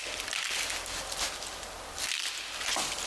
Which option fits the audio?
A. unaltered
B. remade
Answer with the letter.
A